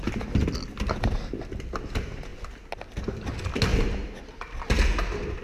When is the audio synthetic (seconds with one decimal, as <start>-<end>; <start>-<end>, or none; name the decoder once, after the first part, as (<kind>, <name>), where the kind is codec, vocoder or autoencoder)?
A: none